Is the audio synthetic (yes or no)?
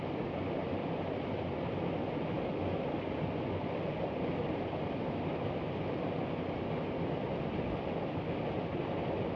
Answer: no